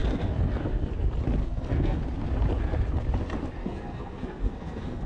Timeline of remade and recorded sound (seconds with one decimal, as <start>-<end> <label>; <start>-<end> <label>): 0.0-0.9 remade; 0.9-1.4 recorded; 1.4-2.0 remade; 2.0-3.6 recorded; 3.6-5.1 remade